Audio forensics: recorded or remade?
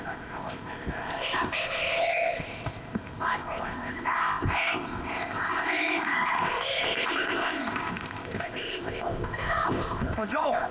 remade